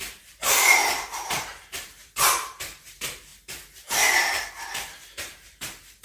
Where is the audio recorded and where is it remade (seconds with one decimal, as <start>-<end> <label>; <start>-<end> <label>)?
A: 0.0-0.8 remade; 0.8-1.3 recorded; 1.3-3.3 remade; 3.3-4.4 recorded; 4.4-6.0 remade